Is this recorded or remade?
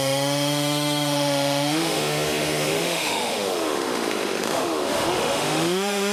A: remade